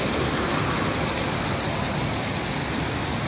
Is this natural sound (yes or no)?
yes